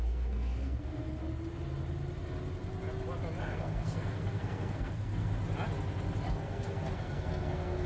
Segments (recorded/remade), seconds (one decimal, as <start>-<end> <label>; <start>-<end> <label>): 0.0-1.2 remade; 1.2-3.4 recorded; 3.4-5.3 remade; 5.3-6.3 recorded; 6.3-7.9 remade